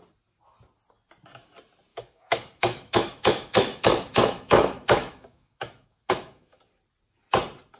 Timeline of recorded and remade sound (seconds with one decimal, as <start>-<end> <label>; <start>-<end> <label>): 0.0-1.9 recorded; 1.9-6.6 remade; 6.6-7.8 recorded